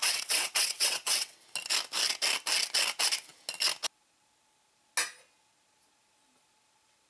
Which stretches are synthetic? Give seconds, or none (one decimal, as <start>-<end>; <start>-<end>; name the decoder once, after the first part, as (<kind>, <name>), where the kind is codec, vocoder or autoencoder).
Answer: 0.0-1.4 (vocoder, WaveNeXt)